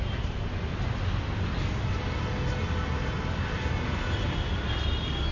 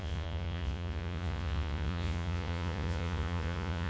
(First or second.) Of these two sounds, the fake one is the second